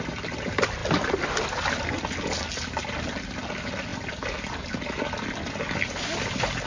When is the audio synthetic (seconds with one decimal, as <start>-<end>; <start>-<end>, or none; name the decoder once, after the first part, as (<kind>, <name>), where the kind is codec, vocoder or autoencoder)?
none